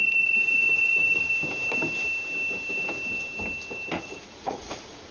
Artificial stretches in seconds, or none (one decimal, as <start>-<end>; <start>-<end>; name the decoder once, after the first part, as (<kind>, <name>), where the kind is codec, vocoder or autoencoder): 0.0-1.3 (vocoder, Vocos); 4.0-5.1